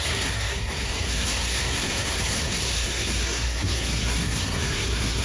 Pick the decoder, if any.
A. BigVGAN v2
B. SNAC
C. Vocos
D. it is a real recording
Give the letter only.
B